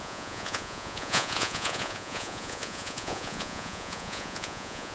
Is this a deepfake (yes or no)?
yes